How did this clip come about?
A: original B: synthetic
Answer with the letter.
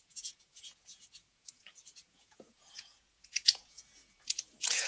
B